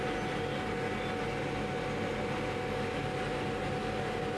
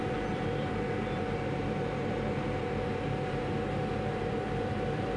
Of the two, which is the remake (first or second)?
second